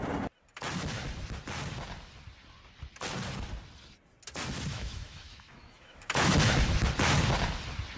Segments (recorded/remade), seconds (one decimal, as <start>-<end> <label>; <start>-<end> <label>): 0.0-4.7 recorded; 4.7-6.3 remade; 6.3-8.0 recorded